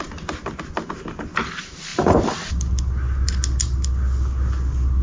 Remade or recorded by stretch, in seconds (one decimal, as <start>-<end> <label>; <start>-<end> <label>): 0.0-5.0 recorded